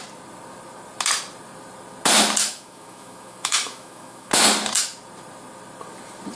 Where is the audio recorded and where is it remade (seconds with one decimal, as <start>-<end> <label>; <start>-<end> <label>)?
0.0-2.4 recorded; 2.4-4.3 remade; 4.3-6.4 recorded